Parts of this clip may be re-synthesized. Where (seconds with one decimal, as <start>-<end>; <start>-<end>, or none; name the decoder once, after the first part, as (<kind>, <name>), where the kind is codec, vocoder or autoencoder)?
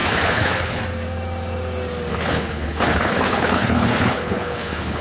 0.0-0.8 (codec, HILCodec); 2.1-5.0